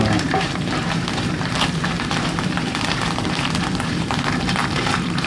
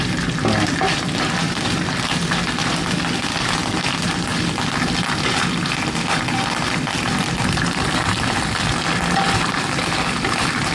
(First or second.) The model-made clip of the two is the first